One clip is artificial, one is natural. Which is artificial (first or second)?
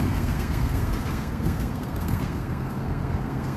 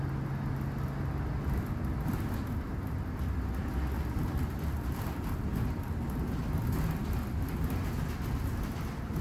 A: first